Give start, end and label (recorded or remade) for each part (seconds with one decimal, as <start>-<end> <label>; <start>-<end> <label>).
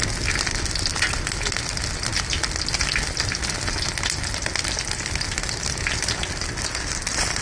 0.0-7.4 recorded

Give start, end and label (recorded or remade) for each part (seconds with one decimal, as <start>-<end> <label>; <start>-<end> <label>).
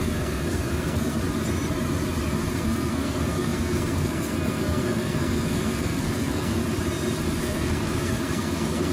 0.0-1.2 remade; 1.2-2.5 recorded; 2.5-6.6 remade; 6.6-7.4 recorded; 7.4-8.9 remade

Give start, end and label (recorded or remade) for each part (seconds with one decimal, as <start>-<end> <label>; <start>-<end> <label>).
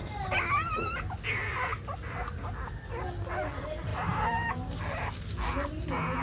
0.0-6.2 recorded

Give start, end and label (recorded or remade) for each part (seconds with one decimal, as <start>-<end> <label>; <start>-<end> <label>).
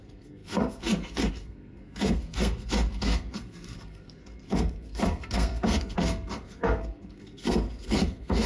0.0-8.5 remade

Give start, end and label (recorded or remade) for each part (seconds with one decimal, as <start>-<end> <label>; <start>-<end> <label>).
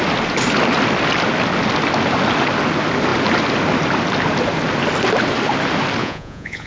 0.0-6.0 recorded; 6.0-6.7 remade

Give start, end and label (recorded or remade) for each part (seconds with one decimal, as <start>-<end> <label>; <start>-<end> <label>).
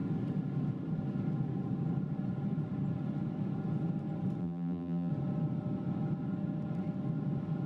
0.0-4.4 recorded; 4.4-5.1 remade; 5.1-7.7 recorded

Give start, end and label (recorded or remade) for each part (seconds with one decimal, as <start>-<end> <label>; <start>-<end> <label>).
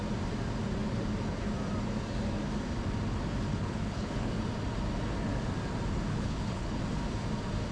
0.0-3.5 recorded; 3.5-4.3 remade; 4.3-6.1 recorded; 6.1-6.8 remade; 6.8-7.7 recorded